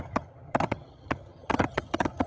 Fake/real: fake